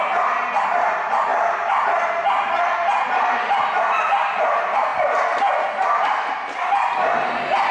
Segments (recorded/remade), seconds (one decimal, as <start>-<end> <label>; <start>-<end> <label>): 0.0-4.9 recorded; 4.9-5.5 remade; 5.5-7.7 recorded